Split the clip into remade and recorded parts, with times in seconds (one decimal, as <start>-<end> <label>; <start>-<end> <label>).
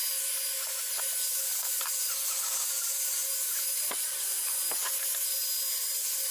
0.0-6.3 recorded